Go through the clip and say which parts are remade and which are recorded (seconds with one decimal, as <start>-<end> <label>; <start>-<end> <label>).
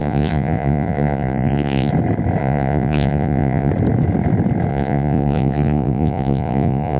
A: 0.0-1.9 remade; 1.9-2.4 recorded; 2.4-3.7 remade; 3.7-4.7 recorded; 4.7-7.0 remade